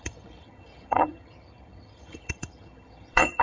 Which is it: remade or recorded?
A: remade